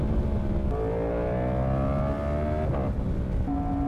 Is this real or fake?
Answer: real